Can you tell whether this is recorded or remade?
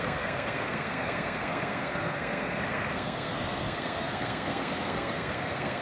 remade